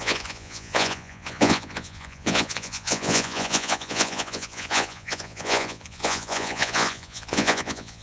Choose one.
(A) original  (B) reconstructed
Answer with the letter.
B